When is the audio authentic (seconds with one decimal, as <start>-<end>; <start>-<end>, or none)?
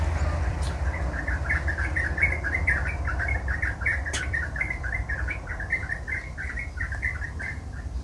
0.0-3.9; 5.5-8.0